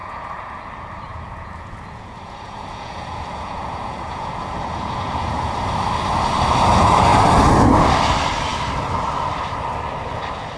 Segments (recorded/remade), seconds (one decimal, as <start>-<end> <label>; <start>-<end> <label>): 0.0-0.6 remade; 0.6-1.1 recorded; 1.1-5.6 remade; 5.6-10.6 recorded